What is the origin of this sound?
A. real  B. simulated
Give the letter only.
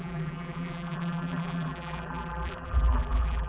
B